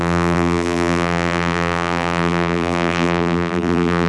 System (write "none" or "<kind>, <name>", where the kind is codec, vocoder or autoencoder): vocoder, BigVGAN v2